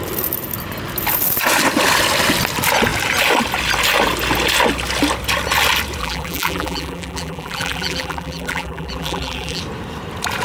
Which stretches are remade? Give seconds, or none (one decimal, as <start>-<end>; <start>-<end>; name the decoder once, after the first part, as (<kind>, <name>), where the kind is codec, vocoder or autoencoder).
6.0-9.6 (vocoder, BigVGAN v2)